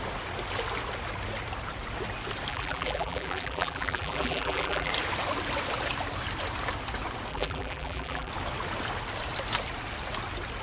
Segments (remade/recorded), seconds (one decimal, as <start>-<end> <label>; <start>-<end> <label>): 0.0-2.5 recorded; 2.5-4.9 remade; 4.9-7.3 recorded; 7.3-8.3 remade; 8.3-10.6 recorded